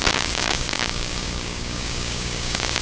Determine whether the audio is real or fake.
fake